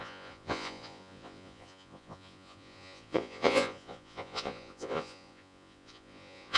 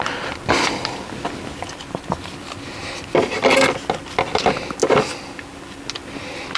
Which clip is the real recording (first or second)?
second